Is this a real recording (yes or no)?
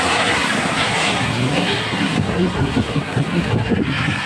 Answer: no